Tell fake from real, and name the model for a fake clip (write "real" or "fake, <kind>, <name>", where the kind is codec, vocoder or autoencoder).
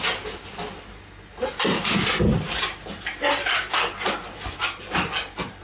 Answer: real